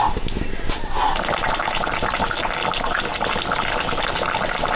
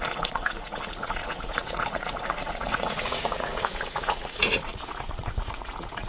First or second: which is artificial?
second